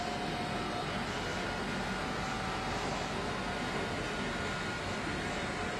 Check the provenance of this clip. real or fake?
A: real